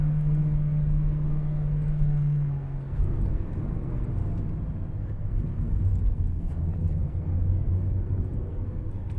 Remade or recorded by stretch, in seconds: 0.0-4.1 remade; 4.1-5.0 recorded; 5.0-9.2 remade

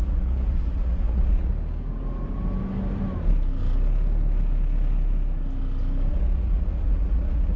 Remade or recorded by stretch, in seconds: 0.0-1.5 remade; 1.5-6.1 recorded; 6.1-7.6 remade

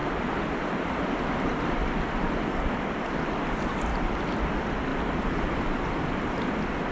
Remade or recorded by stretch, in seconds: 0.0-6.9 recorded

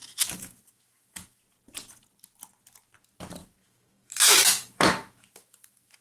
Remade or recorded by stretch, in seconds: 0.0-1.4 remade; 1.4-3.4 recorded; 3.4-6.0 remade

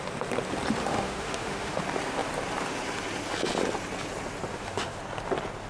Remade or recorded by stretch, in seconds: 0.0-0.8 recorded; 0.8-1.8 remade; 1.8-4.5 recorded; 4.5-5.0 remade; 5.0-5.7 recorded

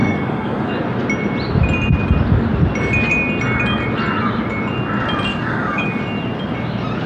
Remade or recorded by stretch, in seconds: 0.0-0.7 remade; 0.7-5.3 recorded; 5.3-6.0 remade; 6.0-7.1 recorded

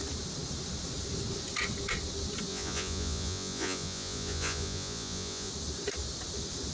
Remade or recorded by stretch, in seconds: 0.0-2.5 recorded; 2.5-5.5 remade; 5.5-6.7 recorded

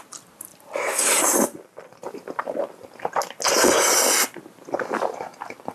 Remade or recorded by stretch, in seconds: 0.0-0.5 recorded; 0.5-3.2 remade; 3.2-5.7 recorded